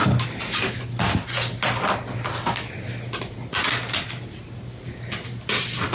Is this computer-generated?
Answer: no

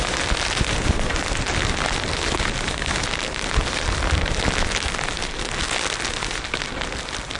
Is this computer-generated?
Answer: no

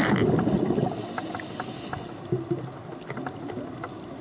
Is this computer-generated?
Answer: no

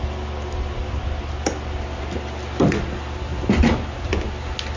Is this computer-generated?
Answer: no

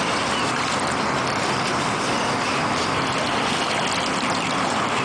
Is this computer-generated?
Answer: no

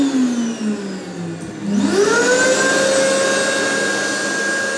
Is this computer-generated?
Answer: no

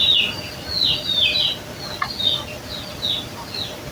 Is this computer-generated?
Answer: no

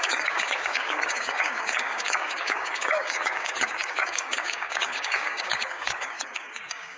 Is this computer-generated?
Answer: yes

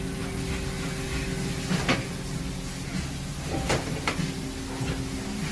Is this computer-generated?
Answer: no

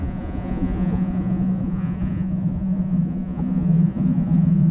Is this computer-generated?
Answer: yes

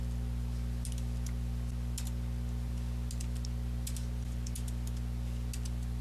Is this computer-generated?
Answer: no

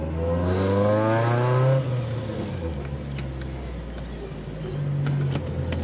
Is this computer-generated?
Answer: no